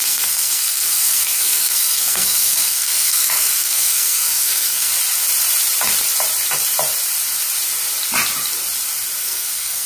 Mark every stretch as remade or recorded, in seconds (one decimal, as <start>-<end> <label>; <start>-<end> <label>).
0.0-4.9 remade; 4.9-9.2 recorded; 9.2-9.9 remade